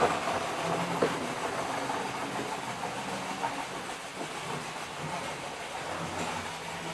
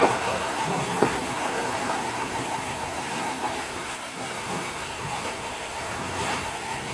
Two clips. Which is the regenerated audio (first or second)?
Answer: second